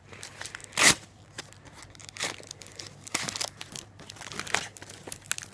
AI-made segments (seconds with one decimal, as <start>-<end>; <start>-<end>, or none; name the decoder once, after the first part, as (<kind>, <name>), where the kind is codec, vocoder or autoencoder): none